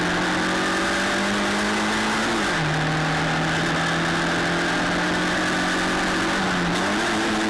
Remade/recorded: recorded